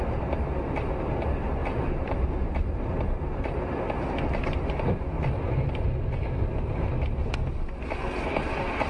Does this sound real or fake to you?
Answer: real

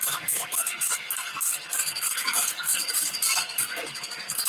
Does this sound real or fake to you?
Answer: fake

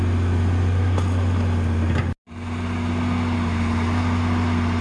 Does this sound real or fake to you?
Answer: real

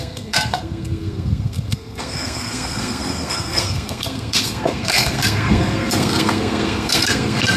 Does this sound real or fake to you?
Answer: fake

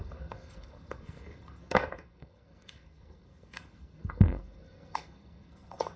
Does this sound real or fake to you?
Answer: fake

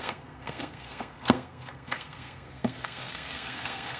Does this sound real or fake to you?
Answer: fake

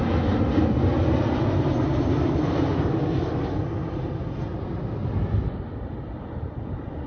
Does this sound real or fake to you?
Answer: real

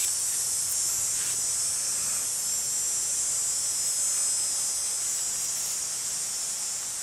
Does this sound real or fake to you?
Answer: real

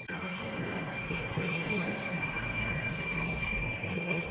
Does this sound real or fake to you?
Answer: fake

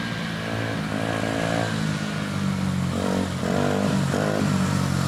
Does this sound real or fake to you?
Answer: real